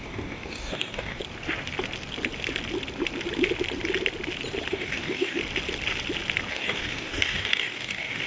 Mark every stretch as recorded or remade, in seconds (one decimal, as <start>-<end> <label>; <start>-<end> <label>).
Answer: 0.0-1.2 remade; 1.2-4.7 recorded; 4.7-5.4 remade; 5.4-6.5 recorded; 6.5-8.3 remade